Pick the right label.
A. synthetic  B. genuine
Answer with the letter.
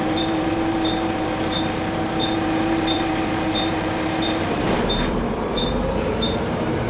A